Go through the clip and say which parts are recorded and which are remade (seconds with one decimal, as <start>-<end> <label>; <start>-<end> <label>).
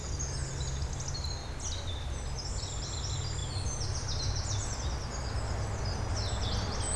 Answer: 0.0-7.0 recorded